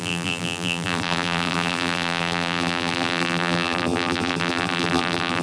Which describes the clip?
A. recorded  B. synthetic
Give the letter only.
B